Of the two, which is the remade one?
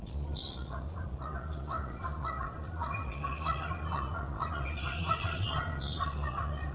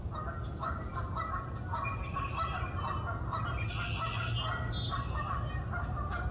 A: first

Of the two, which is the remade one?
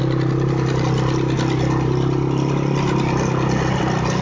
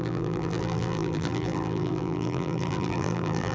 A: second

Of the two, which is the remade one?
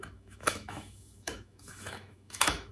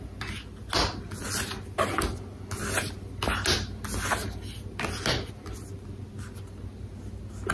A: first